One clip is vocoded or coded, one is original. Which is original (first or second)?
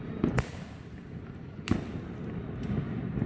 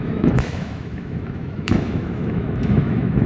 first